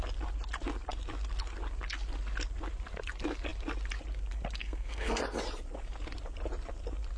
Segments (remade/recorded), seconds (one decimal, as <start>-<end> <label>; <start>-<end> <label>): 0.0-4.6 recorded; 4.6-5.2 remade; 5.2-7.2 recorded